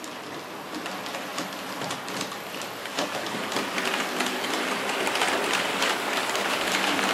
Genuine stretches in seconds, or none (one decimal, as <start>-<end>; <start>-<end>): 0.0-2.8; 3.5-5.7